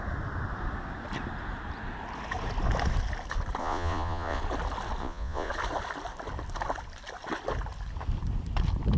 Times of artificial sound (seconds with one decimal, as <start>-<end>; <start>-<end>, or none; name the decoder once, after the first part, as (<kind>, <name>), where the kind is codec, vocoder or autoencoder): 3.6-4.4 (vocoder, Vocos); 5.0-5.5

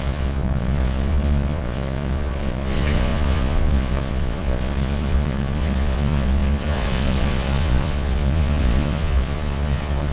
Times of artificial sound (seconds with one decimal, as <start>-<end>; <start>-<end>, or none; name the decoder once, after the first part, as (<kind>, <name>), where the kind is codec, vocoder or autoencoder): 0.0-10.1 (vocoder, Vocos)

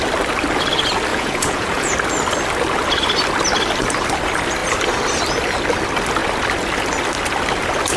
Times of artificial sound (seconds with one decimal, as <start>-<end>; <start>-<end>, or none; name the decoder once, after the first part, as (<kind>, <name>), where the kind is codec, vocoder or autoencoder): 1.1-1.9 (vocoder, Vocos)

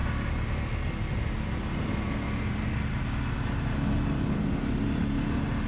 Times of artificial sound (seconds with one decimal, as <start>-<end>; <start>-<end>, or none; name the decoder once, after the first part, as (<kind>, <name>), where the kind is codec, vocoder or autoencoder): none

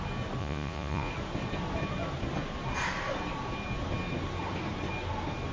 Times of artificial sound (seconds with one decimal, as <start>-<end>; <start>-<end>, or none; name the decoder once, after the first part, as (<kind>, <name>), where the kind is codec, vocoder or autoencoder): 0.4-1.1 (vocoder, Vocos)

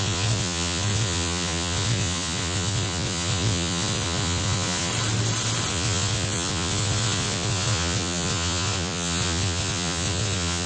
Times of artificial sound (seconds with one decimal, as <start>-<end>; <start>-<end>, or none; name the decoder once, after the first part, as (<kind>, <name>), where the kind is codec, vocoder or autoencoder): 0.0-4.9 (vocoder, Vocos); 5.7-10.7